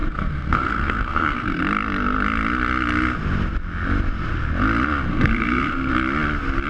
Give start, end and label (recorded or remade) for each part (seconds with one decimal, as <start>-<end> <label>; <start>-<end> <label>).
0.0-1.6 remade; 1.6-5.1 recorded; 5.1-5.9 remade; 5.9-6.7 recorded